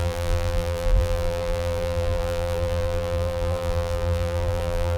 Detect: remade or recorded remade